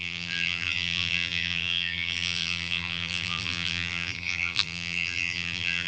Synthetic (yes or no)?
yes